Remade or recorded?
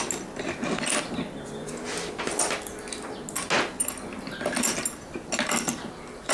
recorded